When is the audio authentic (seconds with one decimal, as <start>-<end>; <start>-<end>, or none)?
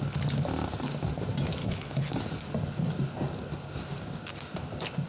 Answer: 0.0-1.6; 2.1-5.1